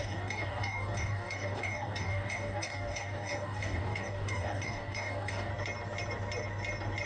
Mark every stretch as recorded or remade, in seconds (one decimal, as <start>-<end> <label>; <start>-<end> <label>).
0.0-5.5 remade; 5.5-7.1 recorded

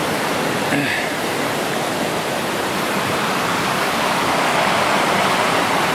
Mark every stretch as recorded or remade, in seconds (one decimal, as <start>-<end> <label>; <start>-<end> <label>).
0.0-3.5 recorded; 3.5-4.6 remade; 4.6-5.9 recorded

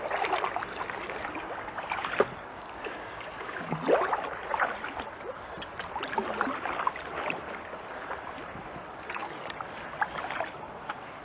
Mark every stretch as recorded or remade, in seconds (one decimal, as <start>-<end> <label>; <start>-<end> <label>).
0.0-2.5 recorded; 2.5-3.7 remade; 3.7-11.2 recorded

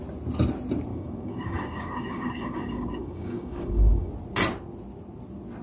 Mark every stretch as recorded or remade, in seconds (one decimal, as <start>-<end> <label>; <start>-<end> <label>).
0.0-0.9 recorded; 0.9-4.1 remade; 4.1-5.6 recorded

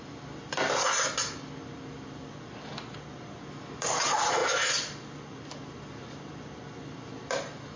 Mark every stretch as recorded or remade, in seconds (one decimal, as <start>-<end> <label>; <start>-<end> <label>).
0.0-7.8 recorded

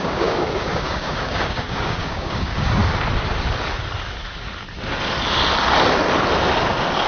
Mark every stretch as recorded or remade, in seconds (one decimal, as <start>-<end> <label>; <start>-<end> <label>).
0.0-2.8 remade; 2.8-7.1 recorded

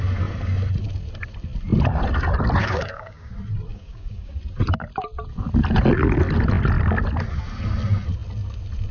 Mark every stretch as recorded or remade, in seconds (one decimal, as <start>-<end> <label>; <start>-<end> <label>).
0.0-2.6 recorded; 2.6-3.3 remade; 3.3-3.7 recorded; 3.7-4.3 remade; 4.3-8.9 recorded